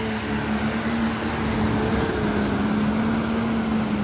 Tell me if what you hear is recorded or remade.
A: recorded